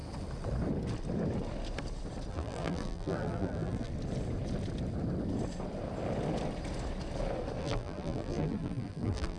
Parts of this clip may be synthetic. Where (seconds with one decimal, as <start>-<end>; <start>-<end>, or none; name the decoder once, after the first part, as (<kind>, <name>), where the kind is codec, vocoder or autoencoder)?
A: 2.3-3.9 (vocoder, BigVGAN v2); 7.6-9.4